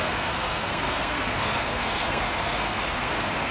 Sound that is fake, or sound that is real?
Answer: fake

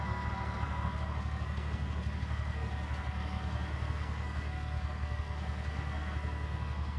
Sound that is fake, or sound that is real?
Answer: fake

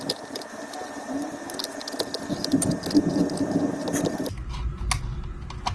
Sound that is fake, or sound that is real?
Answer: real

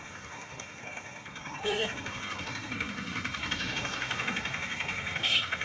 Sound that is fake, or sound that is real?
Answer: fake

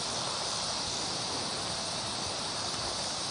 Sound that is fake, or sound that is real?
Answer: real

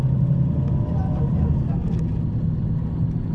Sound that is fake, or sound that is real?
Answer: real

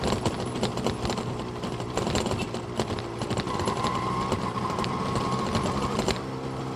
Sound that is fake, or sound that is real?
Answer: real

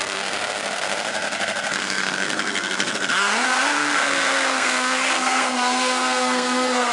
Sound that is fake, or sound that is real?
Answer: fake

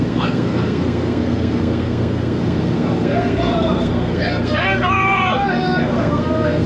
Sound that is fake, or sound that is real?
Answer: fake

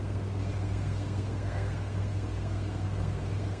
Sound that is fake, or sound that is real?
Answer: fake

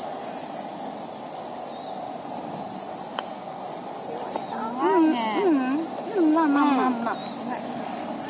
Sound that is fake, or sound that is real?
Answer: real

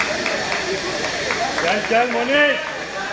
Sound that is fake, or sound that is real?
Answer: real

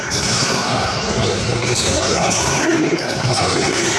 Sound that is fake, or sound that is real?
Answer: fake